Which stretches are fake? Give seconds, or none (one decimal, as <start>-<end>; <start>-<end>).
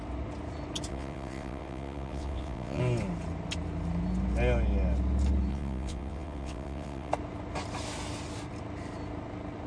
0.9-2.8; 5.5-7.1